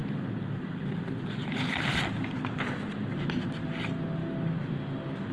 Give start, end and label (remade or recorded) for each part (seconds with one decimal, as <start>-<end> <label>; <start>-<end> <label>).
0.0-5.3 recorded